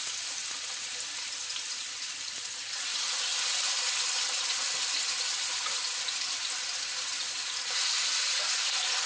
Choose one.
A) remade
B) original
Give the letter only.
B